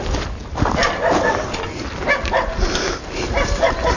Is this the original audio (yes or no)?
yes